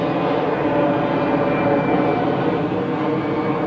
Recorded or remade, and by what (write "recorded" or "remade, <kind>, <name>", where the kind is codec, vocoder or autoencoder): recorded